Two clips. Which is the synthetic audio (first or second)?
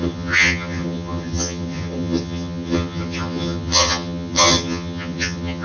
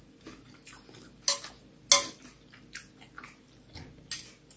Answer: first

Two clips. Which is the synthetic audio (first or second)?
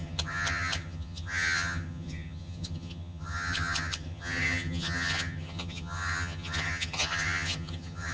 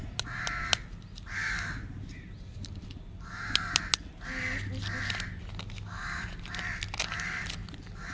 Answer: first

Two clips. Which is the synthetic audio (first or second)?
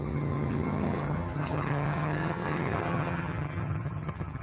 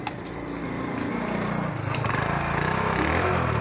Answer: first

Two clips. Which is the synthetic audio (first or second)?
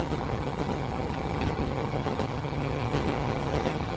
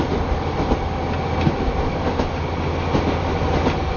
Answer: first